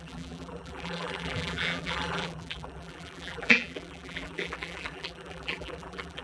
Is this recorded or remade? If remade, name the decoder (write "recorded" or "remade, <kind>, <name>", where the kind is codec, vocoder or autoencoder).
remade, vocoder, BigVGAN v2